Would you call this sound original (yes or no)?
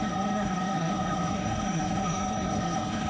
no